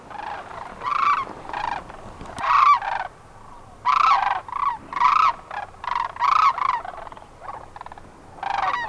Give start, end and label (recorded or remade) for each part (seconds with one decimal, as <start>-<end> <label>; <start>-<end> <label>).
0.0-8.9 recorded